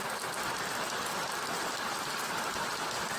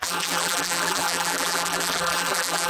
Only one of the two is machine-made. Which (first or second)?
second